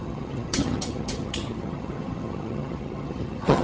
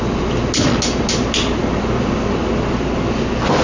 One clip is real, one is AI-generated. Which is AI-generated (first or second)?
first